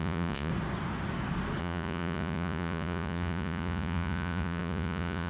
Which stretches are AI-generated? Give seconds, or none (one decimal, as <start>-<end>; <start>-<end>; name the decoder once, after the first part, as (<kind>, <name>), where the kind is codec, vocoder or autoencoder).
0.0-0.5 (vocoder, Vocos); 1.6-5.3